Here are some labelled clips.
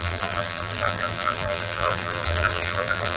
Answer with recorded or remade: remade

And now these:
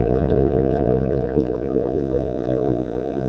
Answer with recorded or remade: remade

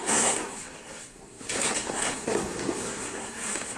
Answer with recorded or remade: remade